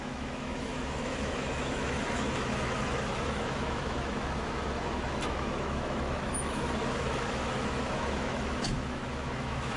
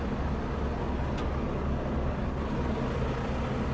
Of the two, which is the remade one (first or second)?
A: first